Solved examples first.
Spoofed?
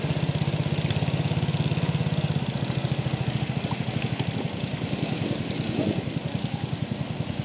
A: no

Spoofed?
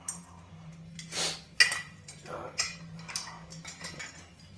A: no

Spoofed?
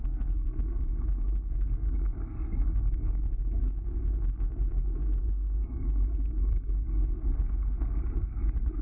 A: yes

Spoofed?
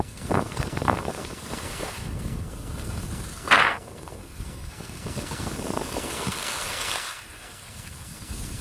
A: yes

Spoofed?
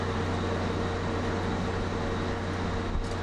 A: no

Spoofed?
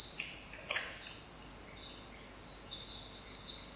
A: no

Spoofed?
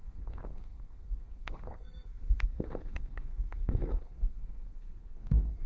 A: yes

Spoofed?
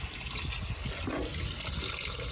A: no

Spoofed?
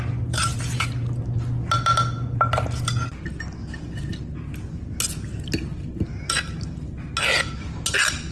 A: no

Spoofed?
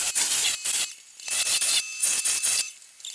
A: no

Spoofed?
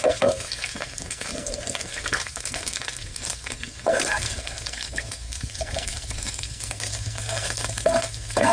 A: yes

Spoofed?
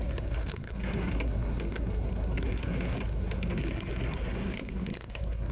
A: yes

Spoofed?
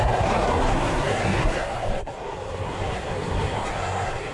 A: yes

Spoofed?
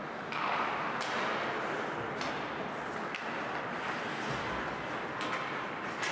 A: no